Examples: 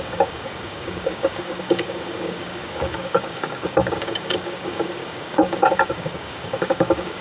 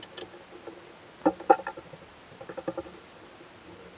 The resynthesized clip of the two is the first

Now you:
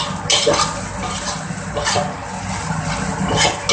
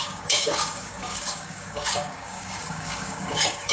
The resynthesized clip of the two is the second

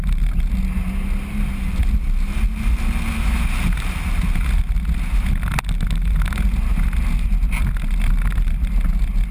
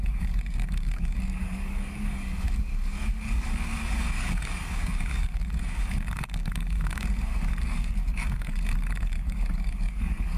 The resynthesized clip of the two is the second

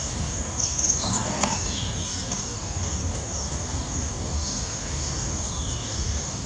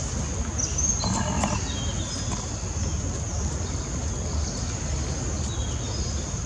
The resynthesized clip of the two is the first